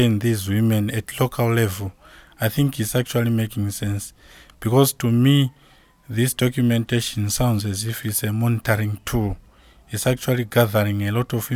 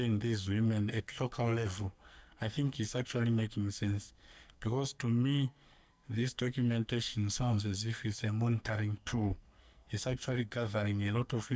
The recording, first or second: first